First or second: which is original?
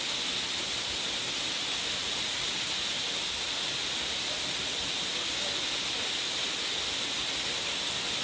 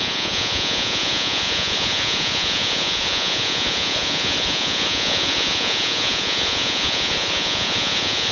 first